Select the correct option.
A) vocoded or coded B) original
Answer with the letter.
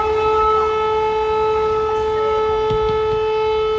B